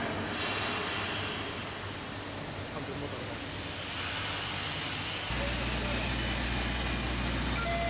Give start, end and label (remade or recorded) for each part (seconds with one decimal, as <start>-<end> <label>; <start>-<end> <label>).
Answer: 0.0-7.9 recorded